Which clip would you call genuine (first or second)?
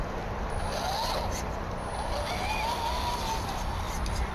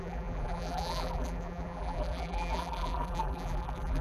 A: first